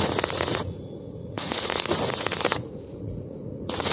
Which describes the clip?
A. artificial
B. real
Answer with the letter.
A